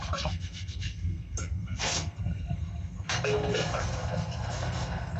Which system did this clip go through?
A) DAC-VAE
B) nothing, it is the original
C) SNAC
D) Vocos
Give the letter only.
C